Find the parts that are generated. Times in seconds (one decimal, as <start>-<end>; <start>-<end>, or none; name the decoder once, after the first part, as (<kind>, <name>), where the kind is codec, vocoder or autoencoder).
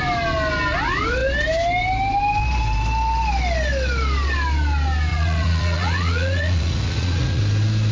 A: 5.1-7.4 (vocoder, Vocos)